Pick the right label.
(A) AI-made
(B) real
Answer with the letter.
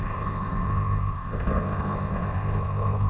A